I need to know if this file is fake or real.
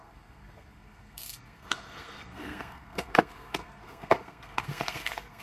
fake